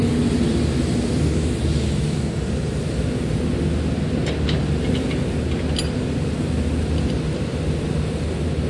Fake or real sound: real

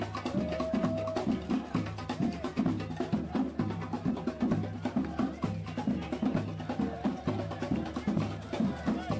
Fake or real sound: real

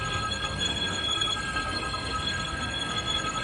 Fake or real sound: fake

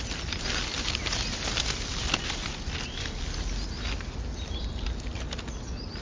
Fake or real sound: real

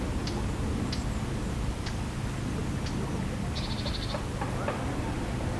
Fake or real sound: real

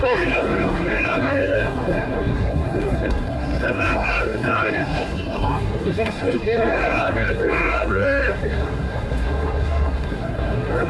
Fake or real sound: fake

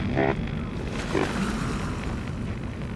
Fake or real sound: real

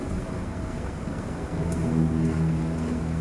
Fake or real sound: fake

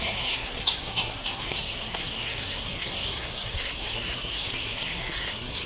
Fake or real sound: fake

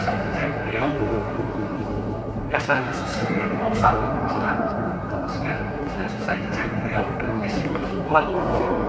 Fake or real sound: fake